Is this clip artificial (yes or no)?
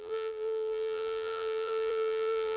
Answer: yes